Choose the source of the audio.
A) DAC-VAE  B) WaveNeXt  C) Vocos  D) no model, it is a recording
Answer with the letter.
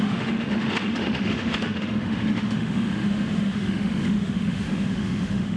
A